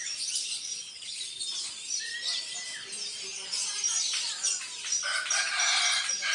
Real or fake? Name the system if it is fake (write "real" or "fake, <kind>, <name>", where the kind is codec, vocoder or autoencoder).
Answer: fake, vocoder, BigVGAN v2